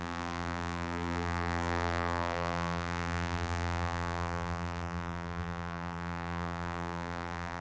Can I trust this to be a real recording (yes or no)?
no